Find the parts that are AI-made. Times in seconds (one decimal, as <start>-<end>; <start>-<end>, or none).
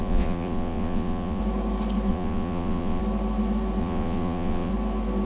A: 0.0-1.4; 2.1-3.0; 3.8-4.7